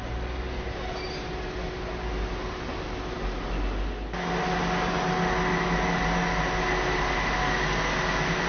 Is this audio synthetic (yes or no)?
no